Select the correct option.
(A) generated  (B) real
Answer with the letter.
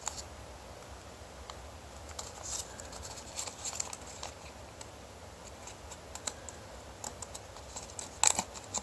B